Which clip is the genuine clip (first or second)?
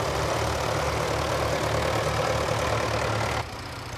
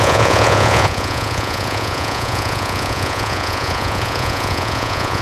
first